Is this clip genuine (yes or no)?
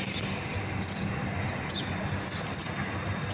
yes